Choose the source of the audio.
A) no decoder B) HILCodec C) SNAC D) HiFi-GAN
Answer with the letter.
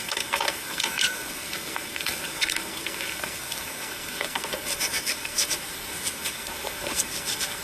C